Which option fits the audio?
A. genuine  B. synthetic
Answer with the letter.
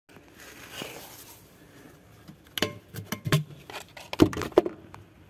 A